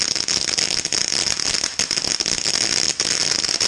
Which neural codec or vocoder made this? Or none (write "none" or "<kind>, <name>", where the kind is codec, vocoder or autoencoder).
vocoder, BigVGAN v2